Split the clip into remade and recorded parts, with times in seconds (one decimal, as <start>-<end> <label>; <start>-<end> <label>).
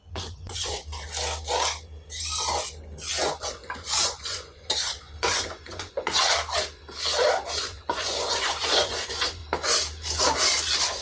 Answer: 0.0-0.8 remade; 0.8-3.4 recorded; 3.4-6.1 remade; 6.1-7.6 recorded; 7.6-9.4 remade; 9.4-11.0 recorded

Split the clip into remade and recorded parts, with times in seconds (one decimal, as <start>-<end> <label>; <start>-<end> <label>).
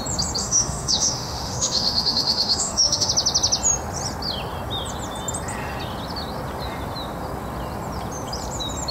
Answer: 0.0-0.4 recorded; 0.4-3.1 remade; 3.1-8.9 recorded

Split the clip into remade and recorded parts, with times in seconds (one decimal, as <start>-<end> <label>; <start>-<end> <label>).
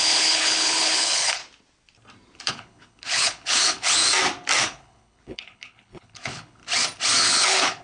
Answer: 0.0-1.4 remade; 1.4-2.5 recorded; 2.5-4.0 remade; 4.0-4.6 recorded; 4.6-6.6 remade; 6.6-7.2 recorded; 7.2-7.8 remade